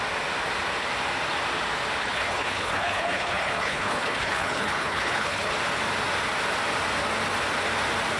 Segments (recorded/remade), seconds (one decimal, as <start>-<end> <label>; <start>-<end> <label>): 0.0-2.0 recorded; 2.0-5.5 remade; 5.5-8.2 recorded